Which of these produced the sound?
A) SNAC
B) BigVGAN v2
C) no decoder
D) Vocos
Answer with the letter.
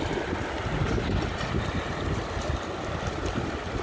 C